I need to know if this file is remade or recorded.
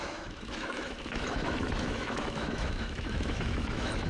remade